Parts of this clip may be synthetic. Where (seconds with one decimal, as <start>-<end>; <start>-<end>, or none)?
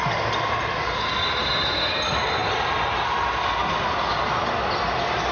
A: none